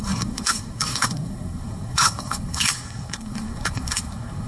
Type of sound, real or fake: fake